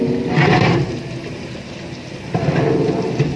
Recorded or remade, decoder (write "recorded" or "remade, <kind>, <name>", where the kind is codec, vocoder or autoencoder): recorded